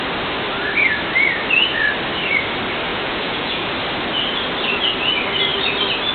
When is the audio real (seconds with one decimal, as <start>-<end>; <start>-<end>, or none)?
0.0-2.9; 3.7-6.1